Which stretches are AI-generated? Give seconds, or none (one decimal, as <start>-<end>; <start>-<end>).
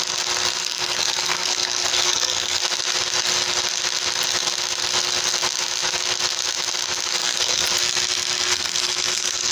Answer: 0.6-2.6; 7.2-7.7; 8.5-9.5